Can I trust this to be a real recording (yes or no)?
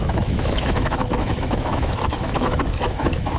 no